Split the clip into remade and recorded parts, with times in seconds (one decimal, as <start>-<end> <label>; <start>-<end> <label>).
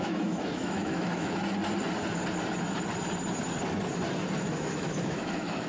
0.0-1.4 remade; 1.4-4.5 recorded; 4.5-5.7 remade